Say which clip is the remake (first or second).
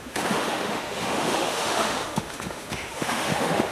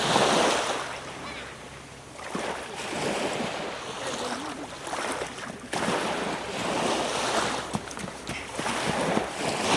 first